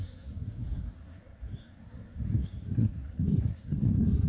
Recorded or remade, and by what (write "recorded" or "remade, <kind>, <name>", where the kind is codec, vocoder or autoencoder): remade, codec, SNAC